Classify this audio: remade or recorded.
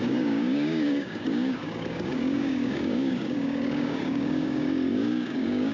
remade